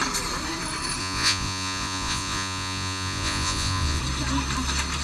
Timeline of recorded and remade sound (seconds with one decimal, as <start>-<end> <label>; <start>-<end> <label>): 0.0-1.0 recorded; 1.0-4.0 remade; 4.0-5.0 recorded